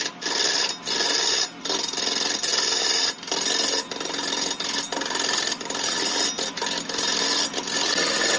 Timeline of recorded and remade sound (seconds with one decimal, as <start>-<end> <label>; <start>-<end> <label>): 0.0-8.4 recorded